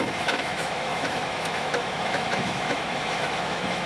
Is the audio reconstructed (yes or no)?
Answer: yes